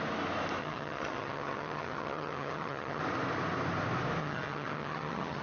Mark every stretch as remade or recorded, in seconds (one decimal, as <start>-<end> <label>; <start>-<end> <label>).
0.0-0.6 recorded; 0.6-3.0 remade; 3.0-4.2 recorded; 4.2-5.4 remade